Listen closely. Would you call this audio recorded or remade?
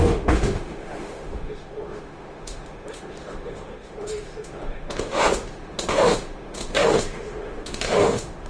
remade